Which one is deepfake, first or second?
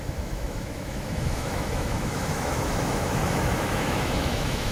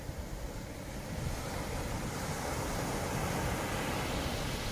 first